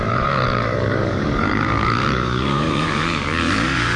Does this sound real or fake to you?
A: fake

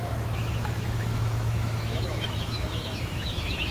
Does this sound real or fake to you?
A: fake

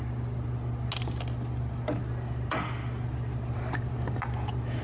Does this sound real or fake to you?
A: real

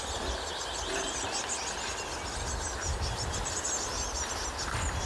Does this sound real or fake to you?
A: real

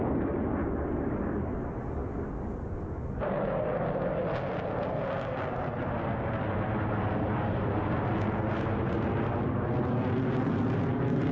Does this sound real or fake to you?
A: real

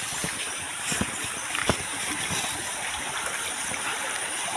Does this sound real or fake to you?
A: fake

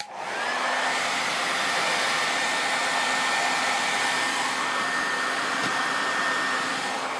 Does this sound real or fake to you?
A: real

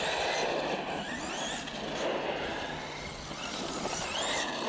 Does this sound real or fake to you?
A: real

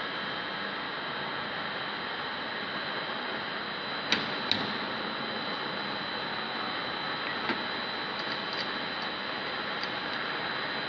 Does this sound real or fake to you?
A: real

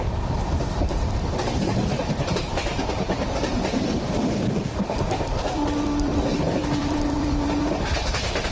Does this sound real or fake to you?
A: fake